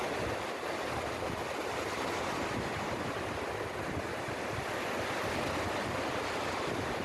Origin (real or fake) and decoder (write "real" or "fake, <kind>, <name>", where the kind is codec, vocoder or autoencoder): real